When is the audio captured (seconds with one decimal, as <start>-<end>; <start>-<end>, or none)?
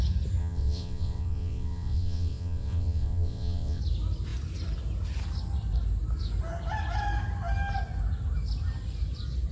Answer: 0.0-0.4; 3.8-9.5